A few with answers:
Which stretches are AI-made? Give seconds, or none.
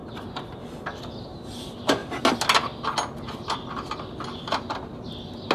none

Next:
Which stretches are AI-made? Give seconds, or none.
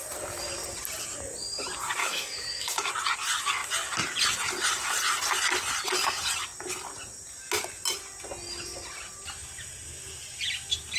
2.0-2.9 (autoencoder, DAC-VAE)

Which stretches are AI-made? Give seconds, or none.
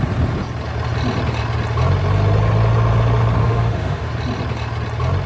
3.4-4.1 (autoencoder, DAC-VAE)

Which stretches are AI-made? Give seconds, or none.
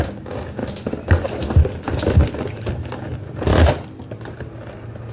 none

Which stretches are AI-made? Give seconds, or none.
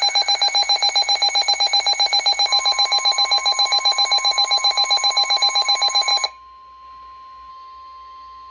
0.0-6.1 (autoencoder, DAC-VAE); 7.5-8.5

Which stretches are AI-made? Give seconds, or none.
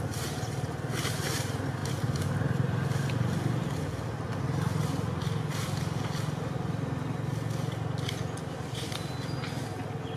none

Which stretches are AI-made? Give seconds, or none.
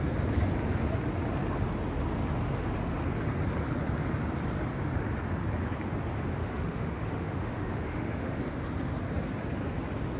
6.3-8.4 (autoencoder, DAC-VAE)